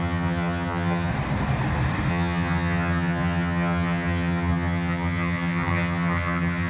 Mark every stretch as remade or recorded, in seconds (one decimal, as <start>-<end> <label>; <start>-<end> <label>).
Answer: 0.0-1.1 remade; 1.1-2.1 recorded; 2.1-6.7 remade